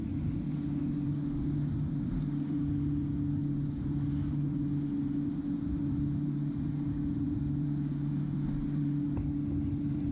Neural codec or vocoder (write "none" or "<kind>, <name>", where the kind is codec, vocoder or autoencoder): none